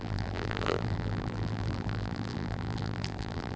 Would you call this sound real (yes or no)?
no